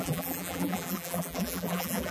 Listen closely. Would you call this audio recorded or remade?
remade